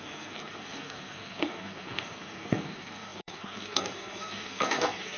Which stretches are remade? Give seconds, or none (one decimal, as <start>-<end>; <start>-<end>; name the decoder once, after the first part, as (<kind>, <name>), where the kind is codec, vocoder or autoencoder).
0.0-5.2 (codec, SNAC)